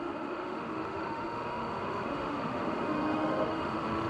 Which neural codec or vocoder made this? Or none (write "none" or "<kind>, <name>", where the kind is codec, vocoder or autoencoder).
autoencoder, DAC-VAE